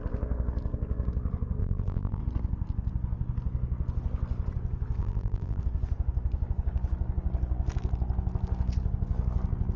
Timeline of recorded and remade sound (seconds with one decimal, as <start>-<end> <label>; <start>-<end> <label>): 0.0-1.6 recorded; 1.6-2.2 remade; 2.2-5.0 recorded; 5.0-5.6 remade; 5.6-9.8 recorded